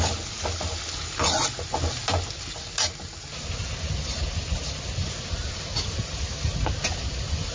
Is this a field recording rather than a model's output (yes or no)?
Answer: yes